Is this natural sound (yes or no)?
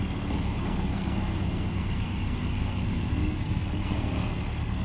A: no